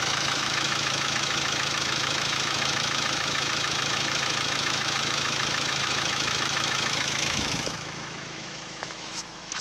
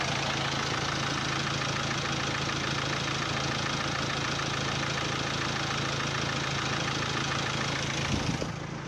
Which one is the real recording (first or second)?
second